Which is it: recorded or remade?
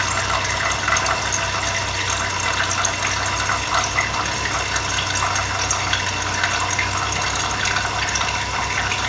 recorded